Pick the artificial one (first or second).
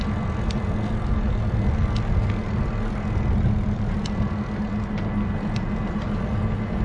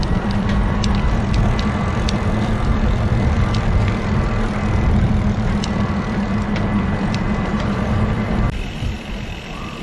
second